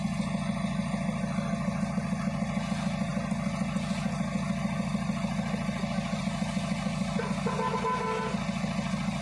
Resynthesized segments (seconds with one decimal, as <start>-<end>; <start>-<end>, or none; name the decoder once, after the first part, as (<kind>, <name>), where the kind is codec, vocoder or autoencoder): none